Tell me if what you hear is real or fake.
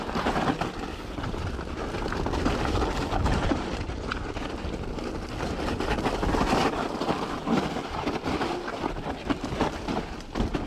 real